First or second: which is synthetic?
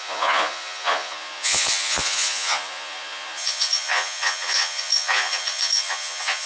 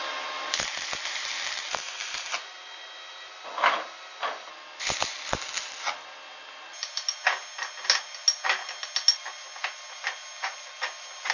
first